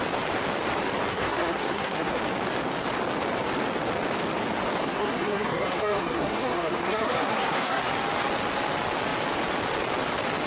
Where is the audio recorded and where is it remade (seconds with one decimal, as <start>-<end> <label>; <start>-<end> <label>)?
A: 0.0-1.1 recorded; 1.1-2.2 remade; 2.2-4.8 recorded; 4.8-7.9 remade; 7.9-10.5 recorded